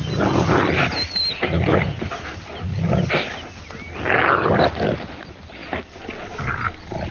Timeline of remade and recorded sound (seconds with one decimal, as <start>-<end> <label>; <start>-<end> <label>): 0.0-7.1 recorded